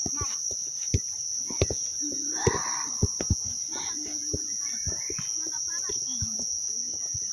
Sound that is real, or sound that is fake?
real